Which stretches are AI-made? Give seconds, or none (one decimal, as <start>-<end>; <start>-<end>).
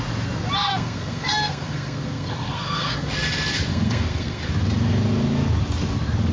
0.7-2.9; 3.7-4.4